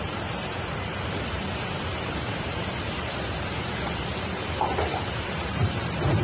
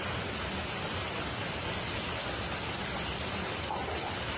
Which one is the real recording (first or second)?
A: second